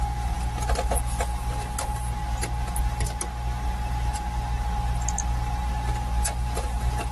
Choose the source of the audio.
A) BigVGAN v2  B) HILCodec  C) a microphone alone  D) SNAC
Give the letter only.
C